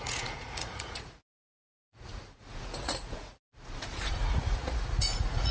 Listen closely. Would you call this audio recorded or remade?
remade